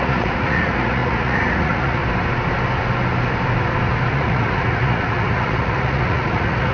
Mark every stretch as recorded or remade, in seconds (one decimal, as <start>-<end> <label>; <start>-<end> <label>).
0.0-2.0 remade; 2.0-4.1 recorded; 4.1-6.7 remade